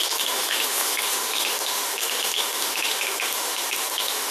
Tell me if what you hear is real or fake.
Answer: fake